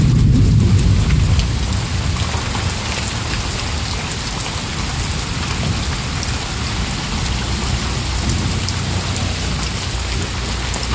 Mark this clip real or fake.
real